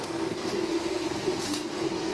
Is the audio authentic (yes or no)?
no